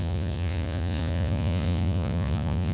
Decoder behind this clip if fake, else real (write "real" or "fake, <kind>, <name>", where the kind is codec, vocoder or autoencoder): fake, vocoder, Vocos